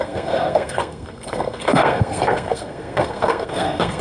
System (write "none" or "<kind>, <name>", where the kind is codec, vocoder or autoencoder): codec, SNAC